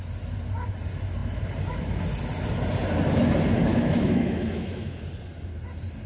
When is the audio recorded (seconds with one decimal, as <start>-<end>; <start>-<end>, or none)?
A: 0.0-3.7; 5.0-6.1